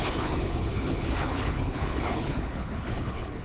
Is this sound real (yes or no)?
no